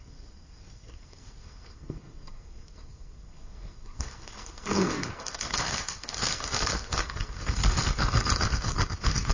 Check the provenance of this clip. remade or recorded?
remade